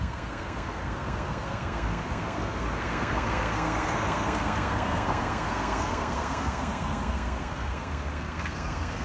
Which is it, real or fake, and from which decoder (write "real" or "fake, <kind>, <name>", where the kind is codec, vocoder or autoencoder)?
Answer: fake, codec, SNAC